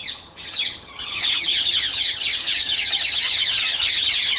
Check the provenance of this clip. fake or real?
fake